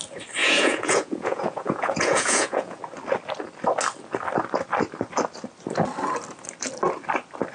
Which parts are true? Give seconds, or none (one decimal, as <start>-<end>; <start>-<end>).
0.0-0.4; 2.8-7.5